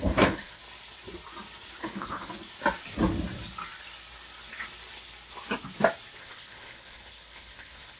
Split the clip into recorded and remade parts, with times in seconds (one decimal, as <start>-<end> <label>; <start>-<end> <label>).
0.0-0.6 remade; 0.6-1.8 recorded; 1.8-2.3 remade; 2.3-6.2 recorded; 6.2-8.0 remade